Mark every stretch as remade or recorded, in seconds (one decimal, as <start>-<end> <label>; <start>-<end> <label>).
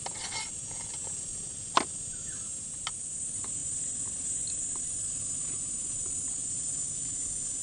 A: 0.0-7.6 recorded